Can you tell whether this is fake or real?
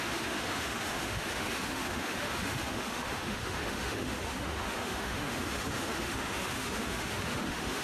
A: fake